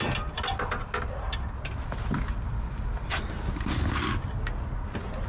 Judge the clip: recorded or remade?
recorded